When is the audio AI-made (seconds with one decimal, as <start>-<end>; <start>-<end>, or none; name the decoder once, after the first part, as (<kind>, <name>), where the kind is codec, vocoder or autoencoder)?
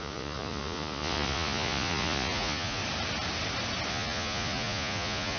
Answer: 0.0-2.8 (vocoder, Vocos); 3.9-5.4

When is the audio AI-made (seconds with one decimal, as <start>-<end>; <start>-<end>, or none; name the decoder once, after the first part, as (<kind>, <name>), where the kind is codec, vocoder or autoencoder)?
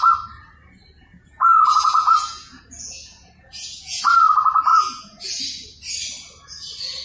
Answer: 1.1-4.0 (vocoder, Vocos); 4.7-5.4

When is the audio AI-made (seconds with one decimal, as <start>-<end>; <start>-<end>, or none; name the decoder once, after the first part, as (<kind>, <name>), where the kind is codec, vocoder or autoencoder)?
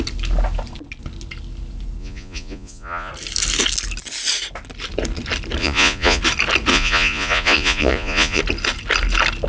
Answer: 2.0-3.1 (vocoder, Vocos); 5.6-6.2; 6.7-8.4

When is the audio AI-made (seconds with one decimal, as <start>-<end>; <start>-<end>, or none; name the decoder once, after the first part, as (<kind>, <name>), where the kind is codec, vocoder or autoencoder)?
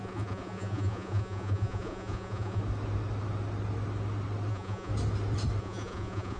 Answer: 0.0-2.6 (vocoder, Vocos); 4.5-4.9; 5.6-6.4